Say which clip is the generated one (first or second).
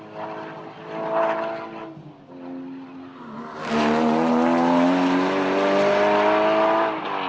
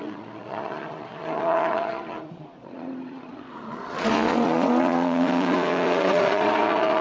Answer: second